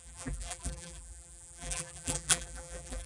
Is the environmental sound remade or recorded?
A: remade